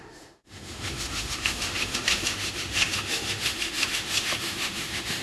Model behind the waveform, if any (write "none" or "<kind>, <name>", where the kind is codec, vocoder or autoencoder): autoencoder, DAC-VAE